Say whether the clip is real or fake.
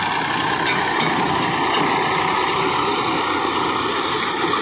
real